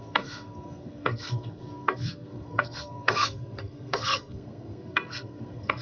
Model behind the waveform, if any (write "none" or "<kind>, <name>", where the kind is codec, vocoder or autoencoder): codec, SNAC